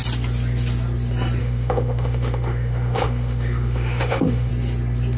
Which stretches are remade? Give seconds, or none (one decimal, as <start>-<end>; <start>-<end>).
1.4-4.5